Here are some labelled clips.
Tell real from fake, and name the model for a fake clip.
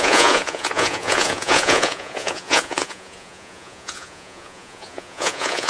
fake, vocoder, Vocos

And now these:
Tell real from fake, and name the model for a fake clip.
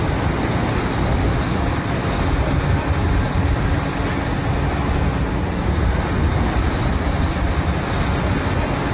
real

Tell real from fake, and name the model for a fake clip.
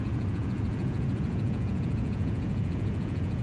fake, vocoder, Vocos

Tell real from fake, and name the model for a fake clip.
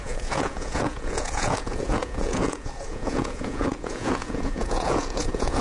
fake, vocoder, Vocos